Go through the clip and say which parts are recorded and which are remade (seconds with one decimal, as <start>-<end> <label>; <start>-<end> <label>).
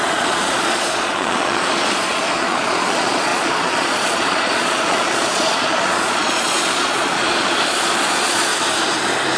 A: 0.0-8.5 remade; 8.5-9.4 recorded